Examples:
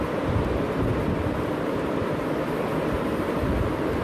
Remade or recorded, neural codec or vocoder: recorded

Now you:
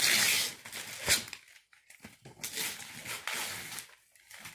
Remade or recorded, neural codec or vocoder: recorded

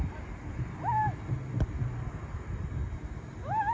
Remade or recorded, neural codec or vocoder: recorded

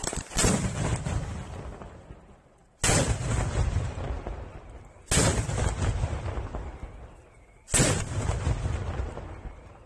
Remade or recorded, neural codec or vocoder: recorded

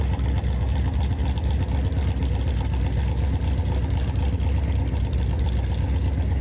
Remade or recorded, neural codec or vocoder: recorded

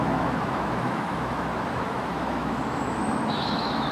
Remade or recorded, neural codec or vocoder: remade, autoencoder, DAC-VAE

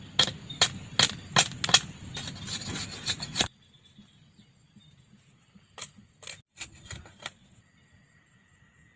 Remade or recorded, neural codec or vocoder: recorded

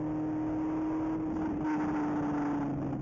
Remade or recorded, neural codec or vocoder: recorded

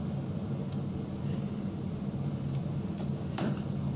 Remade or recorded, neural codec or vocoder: recorded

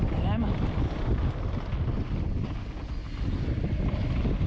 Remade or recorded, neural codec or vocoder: recorded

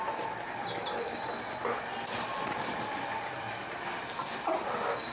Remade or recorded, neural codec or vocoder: recorded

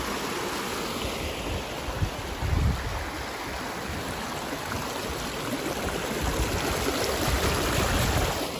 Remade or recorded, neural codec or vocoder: recorded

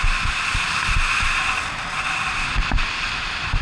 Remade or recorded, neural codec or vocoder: recorded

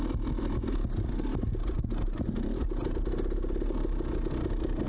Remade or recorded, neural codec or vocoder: recorded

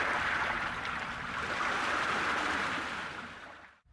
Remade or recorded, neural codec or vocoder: recorded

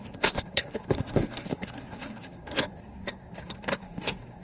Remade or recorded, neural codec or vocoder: remade, codec, SNAC